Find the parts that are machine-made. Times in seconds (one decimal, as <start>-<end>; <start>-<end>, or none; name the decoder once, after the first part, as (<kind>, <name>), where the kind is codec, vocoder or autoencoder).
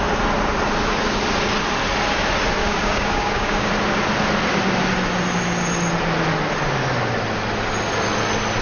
2.6-3.7 (codec, DAC)